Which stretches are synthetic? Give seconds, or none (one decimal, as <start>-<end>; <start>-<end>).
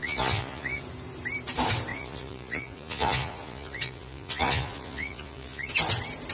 0.0-0.8; 1.9-5.7